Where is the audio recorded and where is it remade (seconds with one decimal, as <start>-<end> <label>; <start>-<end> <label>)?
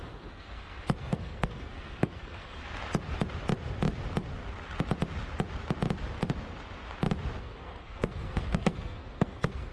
0.0-2.6 remade; 2.6-7.4 recorded; 7.4-9.7 remade